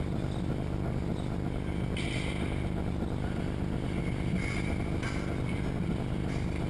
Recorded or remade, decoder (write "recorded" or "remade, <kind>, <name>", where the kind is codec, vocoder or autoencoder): recorded